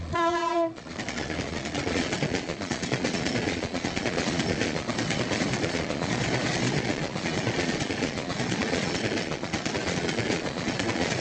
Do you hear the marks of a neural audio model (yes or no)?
yes